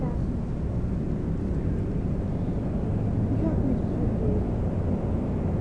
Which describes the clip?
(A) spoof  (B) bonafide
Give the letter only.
B